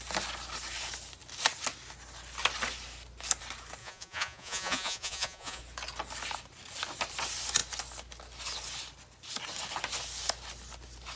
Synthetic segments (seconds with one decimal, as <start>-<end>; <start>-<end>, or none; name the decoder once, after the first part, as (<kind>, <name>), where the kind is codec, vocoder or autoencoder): 3.8-5.6 (vocoder, Vocos)